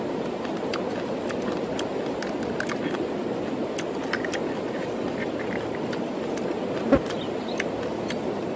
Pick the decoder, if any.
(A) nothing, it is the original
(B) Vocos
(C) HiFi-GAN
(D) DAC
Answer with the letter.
A